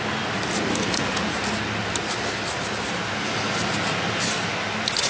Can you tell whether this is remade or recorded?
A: recorded